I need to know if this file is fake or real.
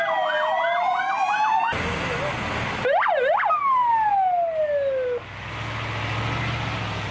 real